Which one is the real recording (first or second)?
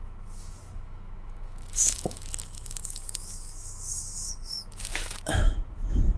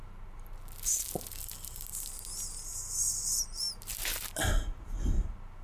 second